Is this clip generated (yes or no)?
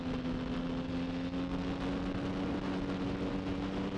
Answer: no